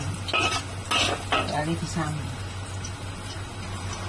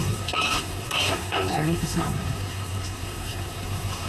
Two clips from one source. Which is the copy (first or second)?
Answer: second